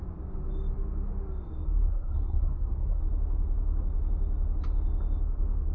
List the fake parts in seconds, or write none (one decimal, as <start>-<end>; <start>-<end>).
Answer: 1.9-3.0